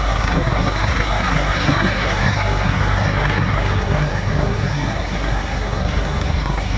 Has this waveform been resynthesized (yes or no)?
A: yes